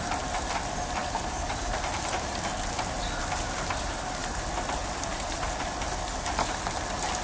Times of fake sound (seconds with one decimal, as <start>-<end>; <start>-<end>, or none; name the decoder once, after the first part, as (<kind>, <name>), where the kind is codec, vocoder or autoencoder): 1.0-2.0 (vocoder, BigVGAN v2)